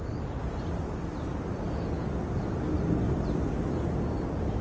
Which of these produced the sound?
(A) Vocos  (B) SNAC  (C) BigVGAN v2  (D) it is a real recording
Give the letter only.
D